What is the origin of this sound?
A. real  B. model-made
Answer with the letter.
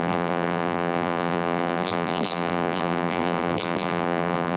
B